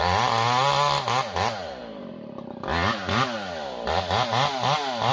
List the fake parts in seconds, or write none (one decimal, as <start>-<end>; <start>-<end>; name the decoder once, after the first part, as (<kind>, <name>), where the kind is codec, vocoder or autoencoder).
none

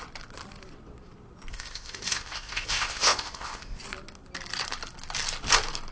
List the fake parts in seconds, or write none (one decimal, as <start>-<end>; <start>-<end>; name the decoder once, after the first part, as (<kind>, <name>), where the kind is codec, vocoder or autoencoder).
1.5-3.8 (codec, ZipCodec)

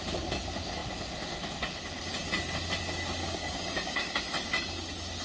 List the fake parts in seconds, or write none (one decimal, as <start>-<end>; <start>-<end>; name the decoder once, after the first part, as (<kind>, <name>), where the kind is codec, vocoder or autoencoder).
3.2-4.2 (codec, DAC)

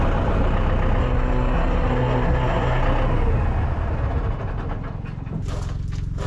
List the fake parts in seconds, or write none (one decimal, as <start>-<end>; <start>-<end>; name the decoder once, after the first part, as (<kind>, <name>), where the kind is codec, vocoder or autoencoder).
1.0-2.8 (codec, SNAC)

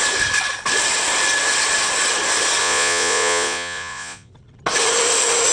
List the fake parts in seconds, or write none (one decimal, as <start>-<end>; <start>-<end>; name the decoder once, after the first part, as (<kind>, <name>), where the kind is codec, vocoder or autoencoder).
2.6-4.3 (vocoder, Vocos)

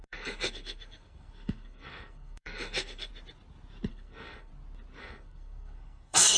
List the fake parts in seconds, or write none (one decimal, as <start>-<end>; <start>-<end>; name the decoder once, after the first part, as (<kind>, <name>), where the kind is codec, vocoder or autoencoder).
0.0-3.1 (codec, SNAC); 3.9-4.5; 5.0-6.4

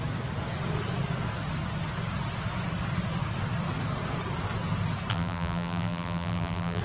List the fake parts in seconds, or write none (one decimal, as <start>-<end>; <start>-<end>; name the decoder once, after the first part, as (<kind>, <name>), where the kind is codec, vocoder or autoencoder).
5.1-6.8 (vocoder, BigVGAN v2)

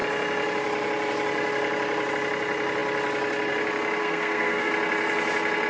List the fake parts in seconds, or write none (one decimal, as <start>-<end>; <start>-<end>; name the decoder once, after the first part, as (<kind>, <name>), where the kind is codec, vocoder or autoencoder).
4.0-4.7 (codec, SNAC)